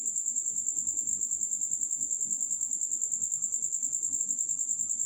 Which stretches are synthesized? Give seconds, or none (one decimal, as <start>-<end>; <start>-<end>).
0.0-1.1; 4.2-5.1